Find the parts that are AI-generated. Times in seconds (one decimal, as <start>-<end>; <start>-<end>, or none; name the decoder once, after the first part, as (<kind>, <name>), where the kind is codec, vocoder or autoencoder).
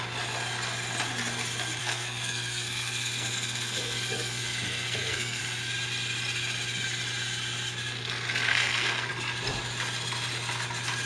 1.8-5.4 (codec, SNAC); 8.5-9.1